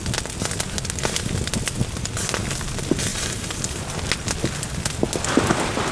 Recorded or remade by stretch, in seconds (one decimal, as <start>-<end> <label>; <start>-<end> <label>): 0.0-3.1 recorded; 3.1-3.9 remade; 3.9-5.9 recorded